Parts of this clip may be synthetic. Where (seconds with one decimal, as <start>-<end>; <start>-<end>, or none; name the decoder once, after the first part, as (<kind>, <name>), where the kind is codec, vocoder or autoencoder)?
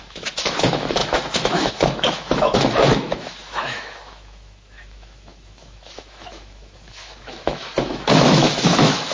0.0-9.1 (autoencoder, DAC-VAE)